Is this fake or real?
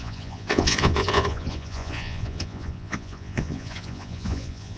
fake